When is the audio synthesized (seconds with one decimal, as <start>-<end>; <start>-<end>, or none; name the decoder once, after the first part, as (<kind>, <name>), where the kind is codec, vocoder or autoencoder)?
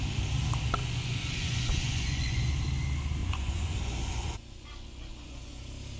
0.8-2.5 (vocoder, Vocos); 3.2-5.6